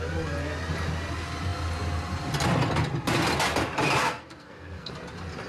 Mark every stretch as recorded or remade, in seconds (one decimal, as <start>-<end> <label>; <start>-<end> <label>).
0.0-4.0 recorded; 4.0-4.9 remade; 4.9-5.5 recorded